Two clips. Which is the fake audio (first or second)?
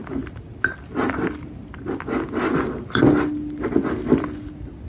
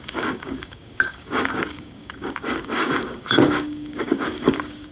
second